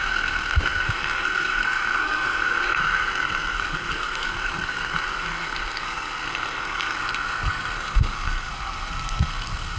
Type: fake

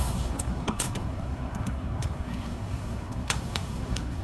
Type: fake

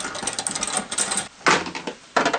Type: real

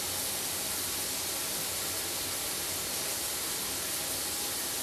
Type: real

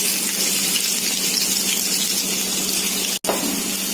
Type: real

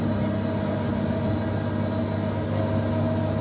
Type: real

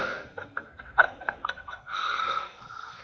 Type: fake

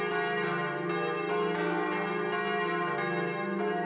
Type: real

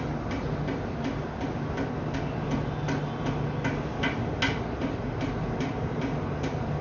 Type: real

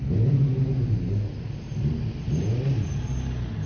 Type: real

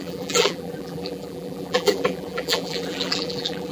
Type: fake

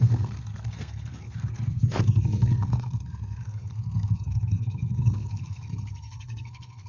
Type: fake